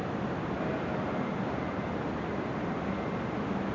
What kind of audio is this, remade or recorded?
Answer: recorded